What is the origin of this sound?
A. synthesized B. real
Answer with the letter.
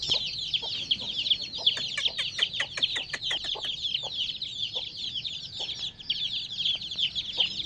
B